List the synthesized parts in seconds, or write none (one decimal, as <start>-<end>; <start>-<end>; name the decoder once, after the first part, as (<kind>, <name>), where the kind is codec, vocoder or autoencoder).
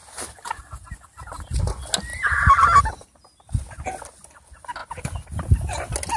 2.1-2.8 (vocoder, BigVGAN v2)